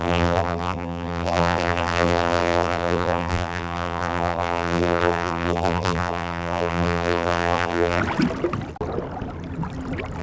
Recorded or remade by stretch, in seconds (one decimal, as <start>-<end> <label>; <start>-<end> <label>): 0.0-8.0 remade; 8.0-10.2 recorded